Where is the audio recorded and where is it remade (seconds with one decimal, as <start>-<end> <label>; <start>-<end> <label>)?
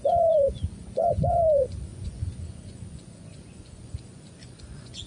0.0-5.1 remade